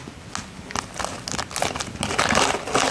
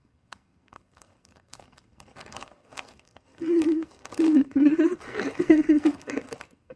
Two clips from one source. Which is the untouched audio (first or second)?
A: first